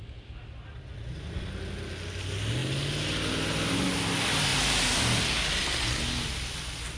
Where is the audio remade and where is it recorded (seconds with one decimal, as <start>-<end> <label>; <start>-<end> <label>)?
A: 0.0-4.5 recorded; 4.5-5.2 remade; 5.2-7.0 recorded